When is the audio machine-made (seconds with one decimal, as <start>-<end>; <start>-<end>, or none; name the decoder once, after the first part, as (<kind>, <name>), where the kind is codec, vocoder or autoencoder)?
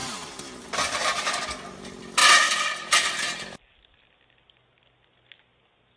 none